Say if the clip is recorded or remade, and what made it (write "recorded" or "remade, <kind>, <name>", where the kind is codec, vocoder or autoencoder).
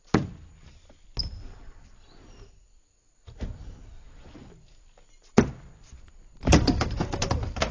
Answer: recorded